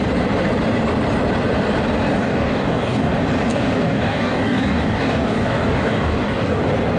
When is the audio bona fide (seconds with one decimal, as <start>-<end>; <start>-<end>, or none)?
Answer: 0.0-2.2; 3.1-3.5; 6.6-7.0